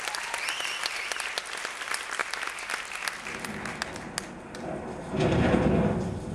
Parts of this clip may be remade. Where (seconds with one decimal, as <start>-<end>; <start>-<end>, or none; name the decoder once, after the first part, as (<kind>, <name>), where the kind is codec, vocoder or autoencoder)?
none